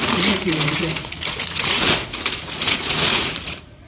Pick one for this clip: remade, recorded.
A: remade